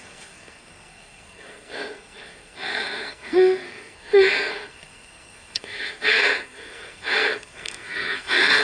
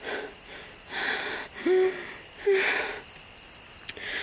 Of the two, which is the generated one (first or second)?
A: first